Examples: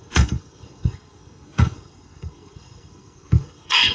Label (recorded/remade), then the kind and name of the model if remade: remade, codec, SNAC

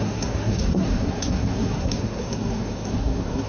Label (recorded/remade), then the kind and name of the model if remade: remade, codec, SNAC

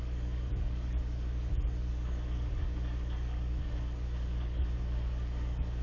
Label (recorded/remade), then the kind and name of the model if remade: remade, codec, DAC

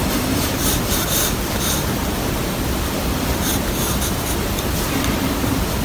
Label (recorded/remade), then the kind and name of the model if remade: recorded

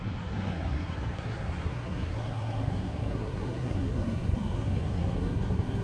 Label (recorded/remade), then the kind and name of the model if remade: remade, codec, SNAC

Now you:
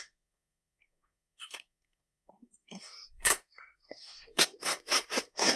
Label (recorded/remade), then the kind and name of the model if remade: remade, codec, SNAC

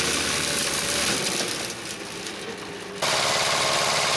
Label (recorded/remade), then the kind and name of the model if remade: recorded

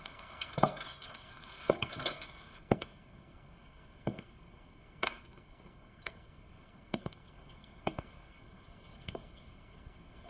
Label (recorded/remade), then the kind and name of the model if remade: remade, codec, SNAC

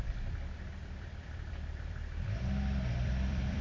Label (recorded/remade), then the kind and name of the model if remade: remade, vocoder, BigVGAN v2